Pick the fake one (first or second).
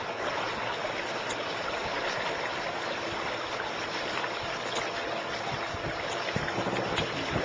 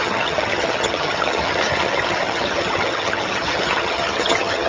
second